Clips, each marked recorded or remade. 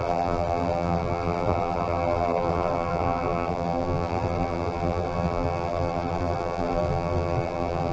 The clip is remade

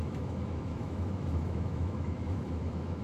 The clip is remade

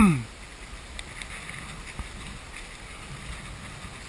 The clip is recorded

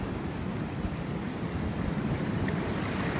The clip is recorded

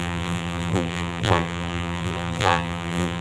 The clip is remade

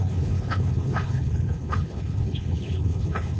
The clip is remade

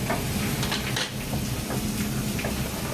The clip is recorded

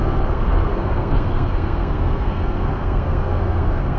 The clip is remade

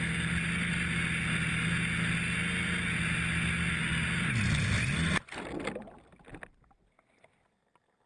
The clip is recorded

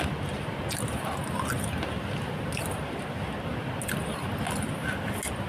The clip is recorded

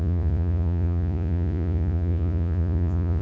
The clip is remade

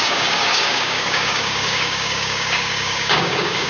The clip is remade